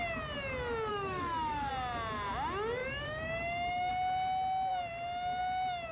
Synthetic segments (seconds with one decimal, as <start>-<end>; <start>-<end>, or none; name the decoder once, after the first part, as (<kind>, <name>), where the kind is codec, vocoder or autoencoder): 0.9-1.7 (autoencoder, DAC-VAE); 2.8-3.9